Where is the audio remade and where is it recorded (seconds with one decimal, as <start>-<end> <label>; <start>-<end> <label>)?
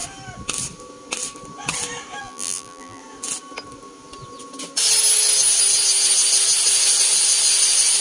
0.0-2.2 recorded; 2.2-3.0 remade; 3.0-8.0 recorded